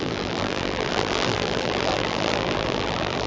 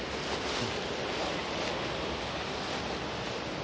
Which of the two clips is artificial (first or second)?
first